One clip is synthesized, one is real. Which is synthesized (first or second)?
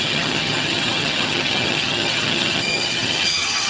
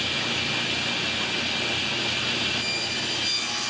first